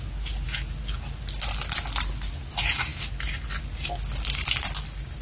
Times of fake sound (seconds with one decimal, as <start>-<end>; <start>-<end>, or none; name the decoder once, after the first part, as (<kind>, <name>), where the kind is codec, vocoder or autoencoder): none